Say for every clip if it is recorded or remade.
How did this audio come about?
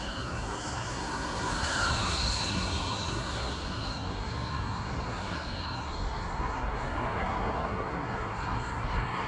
remade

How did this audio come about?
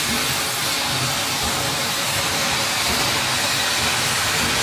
remade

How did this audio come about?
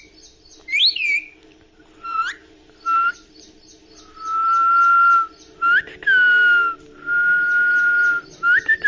recorded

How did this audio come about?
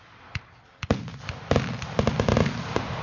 recorded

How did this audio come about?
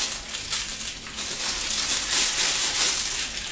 recorded